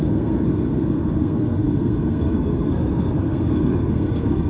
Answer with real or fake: fake